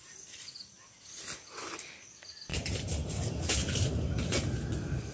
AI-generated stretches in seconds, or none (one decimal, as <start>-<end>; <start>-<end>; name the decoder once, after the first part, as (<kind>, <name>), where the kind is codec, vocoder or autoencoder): 2.5-5.1 (vocoder, BigVGAN v2)

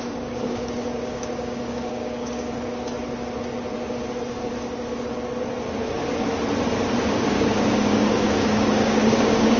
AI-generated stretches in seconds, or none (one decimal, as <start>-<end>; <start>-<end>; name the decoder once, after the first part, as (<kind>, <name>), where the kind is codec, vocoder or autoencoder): 0.0-2.9 (codec, DAC); 7.0-9.6

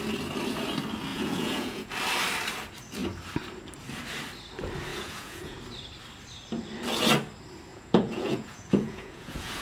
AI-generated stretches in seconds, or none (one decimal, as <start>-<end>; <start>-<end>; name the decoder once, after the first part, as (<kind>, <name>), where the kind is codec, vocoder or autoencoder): 1.1-1.9 (vocoder, Vocos); 4.9-5.6; 7.7-9.6